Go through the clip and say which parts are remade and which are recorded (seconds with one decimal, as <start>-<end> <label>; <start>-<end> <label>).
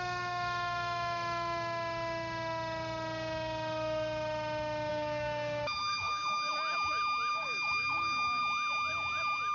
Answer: 0.0-4.9 recorded; 4.9-6.5 remade; 6.5-7.3 recorded; 7.3-8.4 remade; 8.4-9.5 recorded